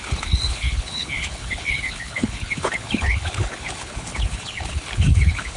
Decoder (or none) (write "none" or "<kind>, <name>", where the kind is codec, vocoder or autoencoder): codec, HILCodec